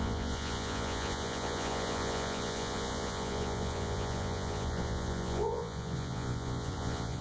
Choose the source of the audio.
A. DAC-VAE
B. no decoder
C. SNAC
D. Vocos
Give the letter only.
D